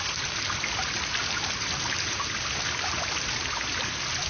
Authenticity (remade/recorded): recorded